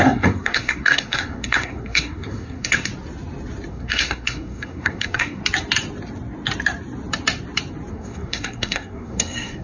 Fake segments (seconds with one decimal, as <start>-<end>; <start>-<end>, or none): 0.0-2.9; 3.7-5.4; 7.9-9.6